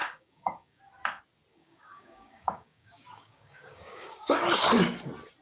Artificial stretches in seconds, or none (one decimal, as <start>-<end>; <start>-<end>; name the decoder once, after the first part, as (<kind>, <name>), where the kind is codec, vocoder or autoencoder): 0.0-0.8 (codec, DAC); 1.5-4.6